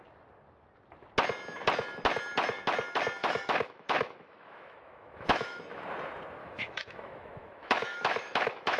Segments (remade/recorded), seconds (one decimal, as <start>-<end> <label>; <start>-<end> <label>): 0.0-3.2 recorded; 3.2-5.6 remade; 5.6-6.4 recorded; 6.4-8.8 remade